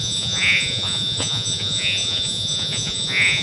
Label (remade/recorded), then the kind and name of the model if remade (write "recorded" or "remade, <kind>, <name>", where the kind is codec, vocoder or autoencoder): remade, vocoder, Vocos